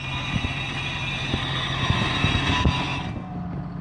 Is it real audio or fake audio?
real